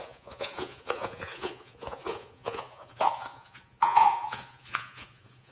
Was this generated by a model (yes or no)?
yes